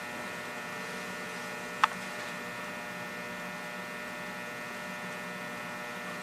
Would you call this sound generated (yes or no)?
no